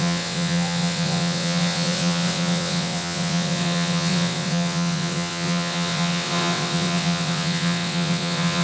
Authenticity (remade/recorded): remade